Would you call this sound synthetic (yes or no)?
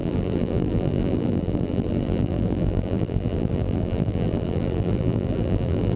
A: yes